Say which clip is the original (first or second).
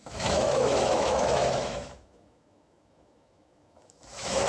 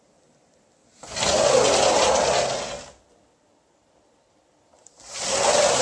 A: second